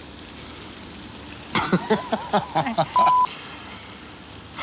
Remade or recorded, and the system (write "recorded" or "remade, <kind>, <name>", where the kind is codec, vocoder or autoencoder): recorded